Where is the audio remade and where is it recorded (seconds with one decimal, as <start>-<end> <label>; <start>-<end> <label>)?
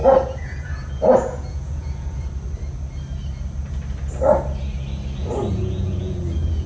0.0-2.3 remade; 2.3-5.5 recorded; 5.5-6.7 remade